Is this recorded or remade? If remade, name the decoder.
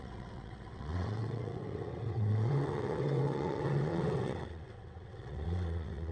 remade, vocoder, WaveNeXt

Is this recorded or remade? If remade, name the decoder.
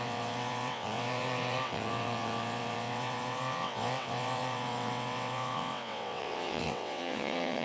remade, vocoder, WaveNeXt